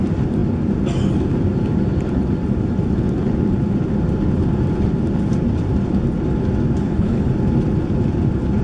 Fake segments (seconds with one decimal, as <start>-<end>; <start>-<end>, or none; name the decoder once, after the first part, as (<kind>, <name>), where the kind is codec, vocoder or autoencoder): 6.8-7.3 (codec, HILCodec)